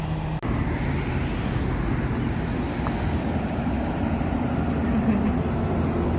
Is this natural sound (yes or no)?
yes